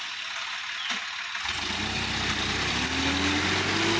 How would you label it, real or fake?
real